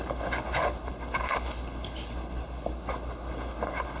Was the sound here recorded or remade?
remade